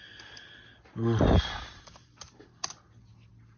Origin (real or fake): real